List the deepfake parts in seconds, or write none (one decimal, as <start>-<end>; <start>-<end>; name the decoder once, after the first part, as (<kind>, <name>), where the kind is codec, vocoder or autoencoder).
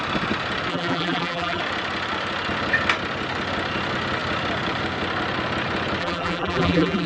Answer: 0.7-1.6 (vocoder, BigVGAN v2); 6.0-7.1